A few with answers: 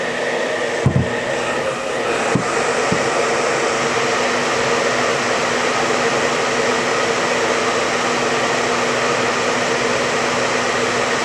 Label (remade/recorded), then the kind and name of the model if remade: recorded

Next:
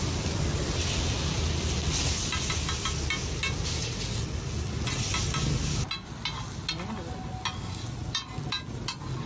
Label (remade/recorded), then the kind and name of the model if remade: recorded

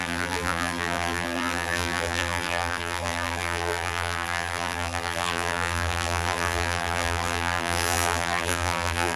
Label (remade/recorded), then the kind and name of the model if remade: remade, vocoder, BigVGAN v2